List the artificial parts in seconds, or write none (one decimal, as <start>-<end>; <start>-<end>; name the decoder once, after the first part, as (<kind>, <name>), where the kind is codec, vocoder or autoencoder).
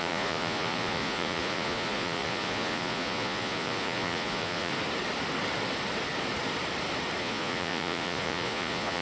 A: 0.0-4.7 (vocoder, Vocos); 7.2-9.0